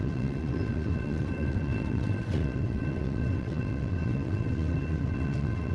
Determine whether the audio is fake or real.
fake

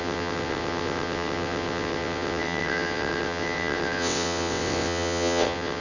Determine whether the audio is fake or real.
fake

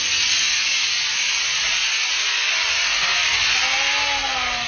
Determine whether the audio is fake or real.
real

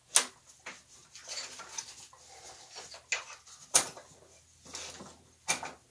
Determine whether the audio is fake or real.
real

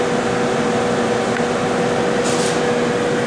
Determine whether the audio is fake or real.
real